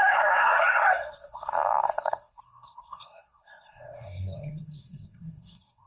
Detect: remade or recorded remade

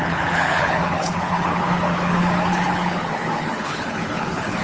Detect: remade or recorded remade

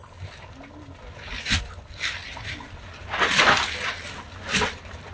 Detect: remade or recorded recorded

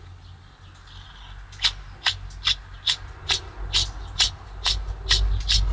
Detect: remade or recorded recorded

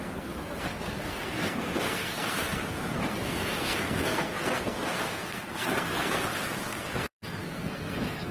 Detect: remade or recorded remade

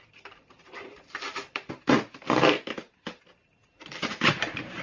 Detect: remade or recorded remade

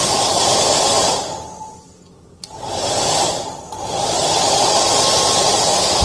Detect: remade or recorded recorded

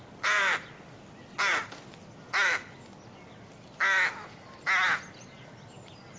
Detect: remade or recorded recorded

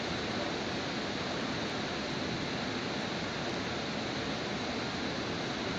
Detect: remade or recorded recorded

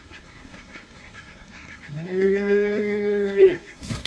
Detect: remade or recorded remade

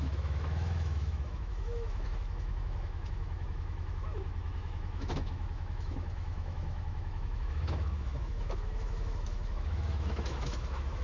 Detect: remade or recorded remade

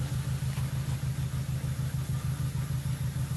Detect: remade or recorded recorded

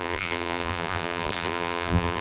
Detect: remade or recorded remade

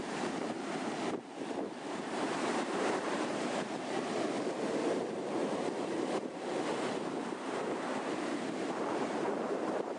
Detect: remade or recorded remade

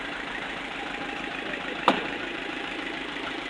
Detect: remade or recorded remade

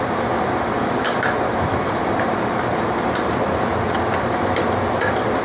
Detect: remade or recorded remade